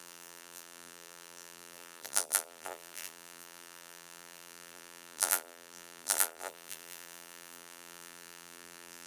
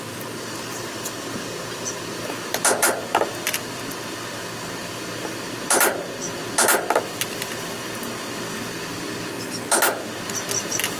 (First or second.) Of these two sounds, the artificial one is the first